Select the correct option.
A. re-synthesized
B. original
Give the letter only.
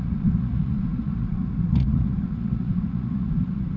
A